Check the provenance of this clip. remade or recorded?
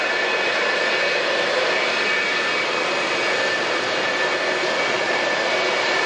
recorded